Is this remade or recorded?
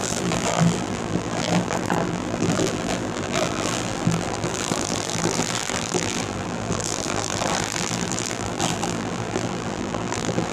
remade